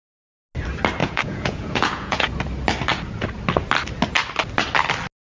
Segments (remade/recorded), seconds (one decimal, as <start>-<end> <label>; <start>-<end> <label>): 0.0-1.0 recorded; 1.0-2.3 remade; 2.3-5.2 recorded